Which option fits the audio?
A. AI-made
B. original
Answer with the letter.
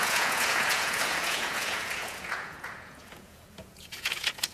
A